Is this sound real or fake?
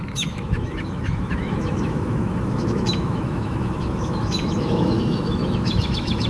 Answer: fake